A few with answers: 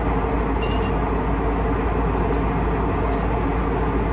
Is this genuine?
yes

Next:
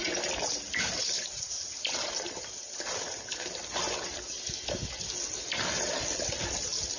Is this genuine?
yes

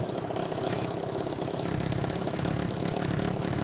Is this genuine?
no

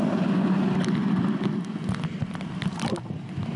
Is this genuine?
yes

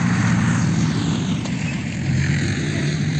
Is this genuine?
no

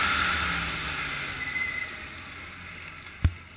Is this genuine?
yes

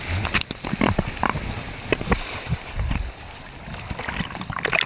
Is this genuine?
yes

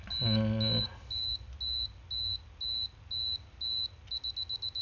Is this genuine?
yes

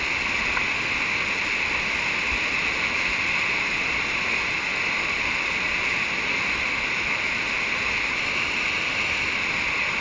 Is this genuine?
yes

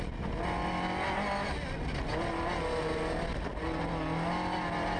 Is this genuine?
yes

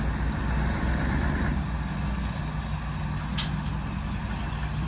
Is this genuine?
yes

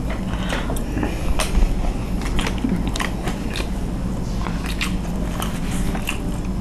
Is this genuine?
yes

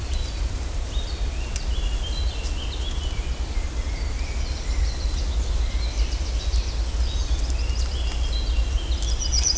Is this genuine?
yes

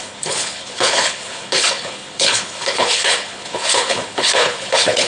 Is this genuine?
no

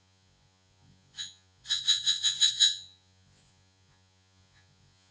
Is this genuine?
no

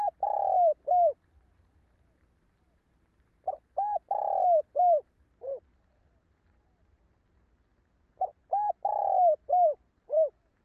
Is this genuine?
yes